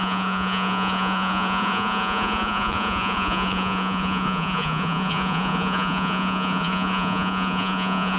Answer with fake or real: fake